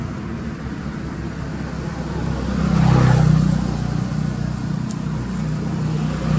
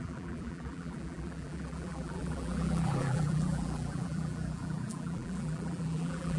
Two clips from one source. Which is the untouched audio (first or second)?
first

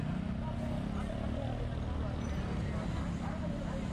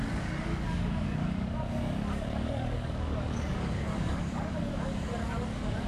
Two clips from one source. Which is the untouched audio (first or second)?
first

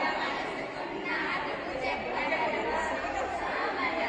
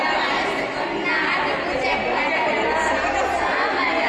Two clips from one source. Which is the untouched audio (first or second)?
second